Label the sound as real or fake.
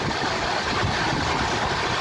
real